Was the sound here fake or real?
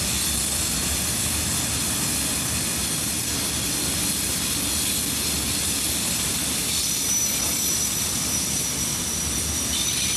real